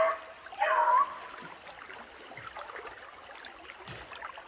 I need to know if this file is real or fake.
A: real